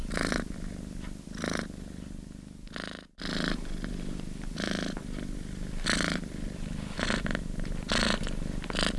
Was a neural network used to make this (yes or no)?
no